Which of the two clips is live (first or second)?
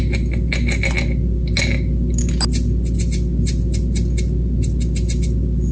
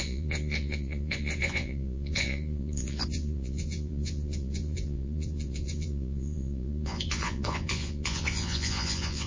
first